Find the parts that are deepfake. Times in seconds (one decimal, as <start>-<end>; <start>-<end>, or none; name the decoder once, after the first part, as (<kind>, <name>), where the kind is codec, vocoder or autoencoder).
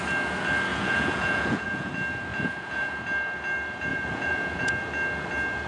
0.7-1.9 (vocoder, Vocos); 2.3-2.9; 3.9-4.7